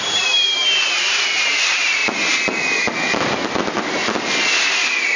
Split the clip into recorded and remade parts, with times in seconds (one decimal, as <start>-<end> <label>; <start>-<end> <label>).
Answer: 0.0-2.0 remade; 2.0-5.2 recorded